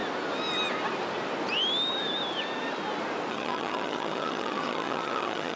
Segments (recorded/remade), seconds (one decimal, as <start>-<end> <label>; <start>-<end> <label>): 0.0-3.3 recorded; 3.3-5.6 remade